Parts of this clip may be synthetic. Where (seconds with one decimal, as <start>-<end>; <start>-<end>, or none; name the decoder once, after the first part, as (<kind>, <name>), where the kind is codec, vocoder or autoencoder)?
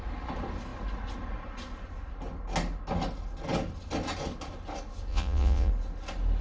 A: 5.1-5.7 (vocoder, Vocos)